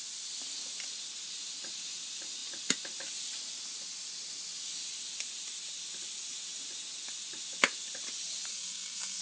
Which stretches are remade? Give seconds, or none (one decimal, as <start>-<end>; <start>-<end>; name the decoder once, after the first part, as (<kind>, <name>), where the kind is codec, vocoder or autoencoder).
8.5-9.2 (codec, SNAC)